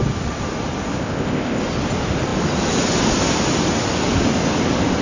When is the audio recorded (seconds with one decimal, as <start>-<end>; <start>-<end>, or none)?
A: 0.0-1.0; 1.6-5.0